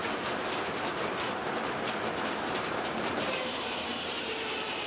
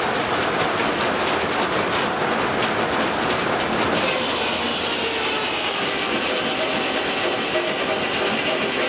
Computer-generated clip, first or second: first